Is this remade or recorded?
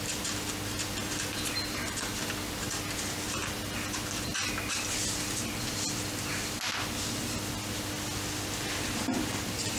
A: recorded